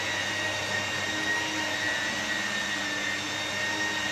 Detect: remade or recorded recorded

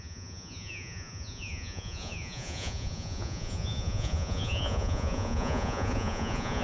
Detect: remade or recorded remade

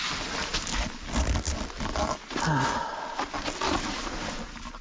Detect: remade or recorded recorded